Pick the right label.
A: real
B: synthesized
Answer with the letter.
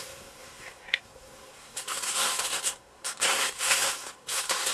B